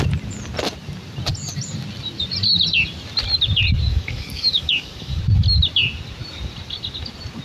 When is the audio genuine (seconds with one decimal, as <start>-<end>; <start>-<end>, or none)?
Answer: 0.0-3.9; 5.2-7.4